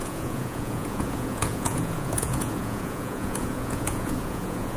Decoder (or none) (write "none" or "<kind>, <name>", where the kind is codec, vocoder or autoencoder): vocoder, Vocos